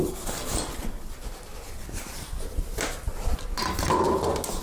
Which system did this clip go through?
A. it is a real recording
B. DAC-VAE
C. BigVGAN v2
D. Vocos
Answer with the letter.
A